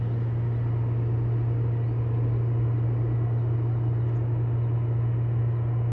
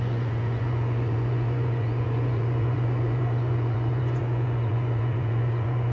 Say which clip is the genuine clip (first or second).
first